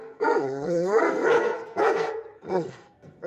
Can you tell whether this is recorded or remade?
remade